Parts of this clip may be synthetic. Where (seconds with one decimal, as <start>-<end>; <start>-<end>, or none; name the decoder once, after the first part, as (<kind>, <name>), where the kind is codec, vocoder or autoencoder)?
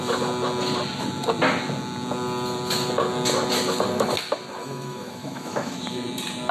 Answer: 4.6-5.8 (autoencoder, DAC-VAE)